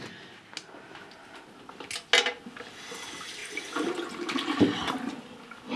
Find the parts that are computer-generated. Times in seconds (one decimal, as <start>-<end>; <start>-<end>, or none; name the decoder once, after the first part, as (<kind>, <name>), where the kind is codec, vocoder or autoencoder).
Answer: none